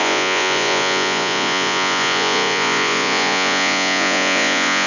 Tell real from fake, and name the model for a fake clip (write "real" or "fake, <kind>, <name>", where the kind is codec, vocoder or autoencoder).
fake, vocoder, Vocos